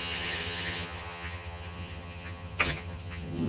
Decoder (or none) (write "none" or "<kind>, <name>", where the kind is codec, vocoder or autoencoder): vocoder, HiFi-GAN